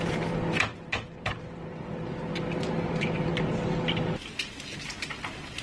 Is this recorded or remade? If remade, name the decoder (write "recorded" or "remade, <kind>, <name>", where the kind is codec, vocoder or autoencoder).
recorded